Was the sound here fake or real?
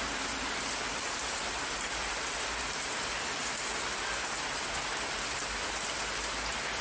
real